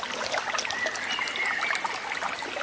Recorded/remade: recorded